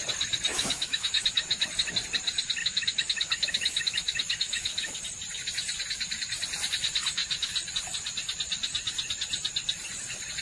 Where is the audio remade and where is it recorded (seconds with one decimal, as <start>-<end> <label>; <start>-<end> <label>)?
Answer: 0.0-0.5 recorded; 0.5-1.5 remade; 1.5-2.6 recorded; 2.6-5.0 remade; 5.0-10.4 recorded